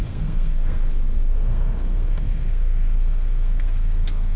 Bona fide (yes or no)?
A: no